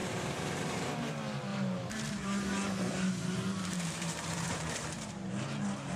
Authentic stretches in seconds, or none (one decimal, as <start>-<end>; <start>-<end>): 0.9-1.5; 5.1-6.0